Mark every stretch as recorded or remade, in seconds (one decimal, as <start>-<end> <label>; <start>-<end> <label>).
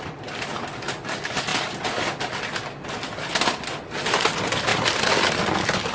0.0-5.9 recorded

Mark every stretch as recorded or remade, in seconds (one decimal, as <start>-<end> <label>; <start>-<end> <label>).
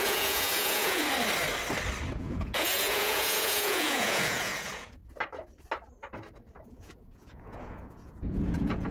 0.0-1.0 remade; 1.0-2.1 recorded; 2.1-5.0 remade; 5.0-6.6 recorded; 6.6-8.9 remade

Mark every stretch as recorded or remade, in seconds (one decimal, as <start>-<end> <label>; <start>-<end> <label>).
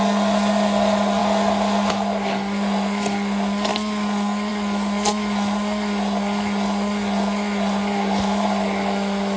0.0-9.4 recorded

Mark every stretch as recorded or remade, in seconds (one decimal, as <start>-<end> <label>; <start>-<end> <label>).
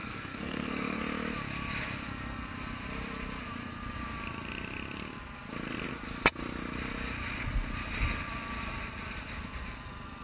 0.0-1.0 remade; 1.0-10.2 recorded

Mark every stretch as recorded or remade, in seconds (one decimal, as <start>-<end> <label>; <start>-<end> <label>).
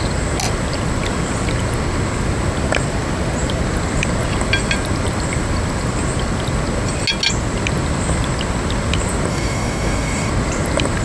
0.0-9.3 recorded; 9.3-10.3 remade; 10.3-11.0 recorded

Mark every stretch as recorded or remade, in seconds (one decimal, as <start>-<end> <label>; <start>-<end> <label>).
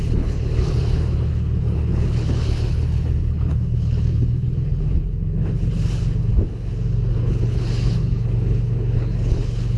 0.0-6.3 remade; 6.3-7.2 recorded; 7.2-9.8 remade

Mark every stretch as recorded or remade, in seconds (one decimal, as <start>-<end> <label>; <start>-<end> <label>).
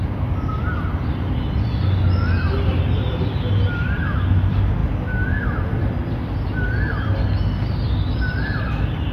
0.0-9.1 recorded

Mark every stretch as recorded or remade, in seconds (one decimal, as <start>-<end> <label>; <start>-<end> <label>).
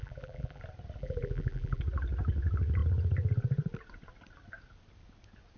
0.0-0.6 remade; 0.6-1.0 recorded; 1.0-1.8 remade; 1.8-5.6 recorded